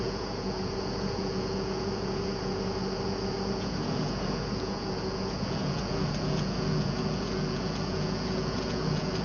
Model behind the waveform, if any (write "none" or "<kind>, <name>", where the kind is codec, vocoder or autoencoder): vocoder, Vocos